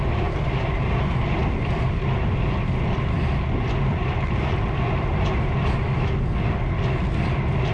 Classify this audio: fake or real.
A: real